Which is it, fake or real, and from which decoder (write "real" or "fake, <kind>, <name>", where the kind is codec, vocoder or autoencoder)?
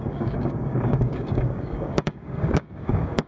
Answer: fake, codec, DAC